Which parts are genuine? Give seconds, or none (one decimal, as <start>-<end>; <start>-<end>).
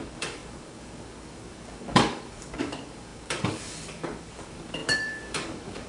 none